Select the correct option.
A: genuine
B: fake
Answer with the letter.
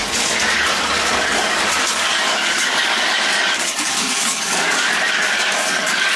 B